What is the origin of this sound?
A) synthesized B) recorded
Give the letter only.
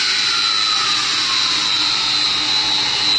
B